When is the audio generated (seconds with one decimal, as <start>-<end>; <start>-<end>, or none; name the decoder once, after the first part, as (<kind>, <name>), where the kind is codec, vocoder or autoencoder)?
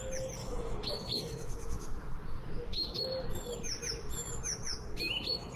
0.4-3.1 (autoencoder, DAC-VAE)